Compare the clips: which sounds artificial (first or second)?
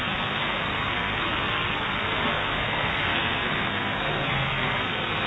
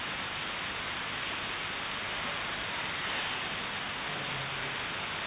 first